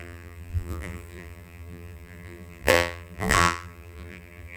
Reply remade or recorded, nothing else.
remade